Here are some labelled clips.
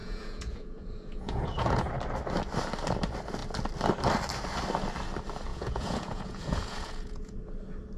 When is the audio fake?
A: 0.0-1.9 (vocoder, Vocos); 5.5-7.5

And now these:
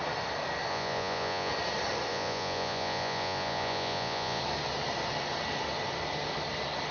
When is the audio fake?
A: 0.7-1.5 (vocoder, Vocos); 2.1-4.4